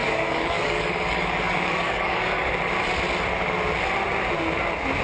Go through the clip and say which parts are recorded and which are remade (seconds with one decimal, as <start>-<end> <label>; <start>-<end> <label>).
0.0-2.5 remade; 2.5-5.0 recorded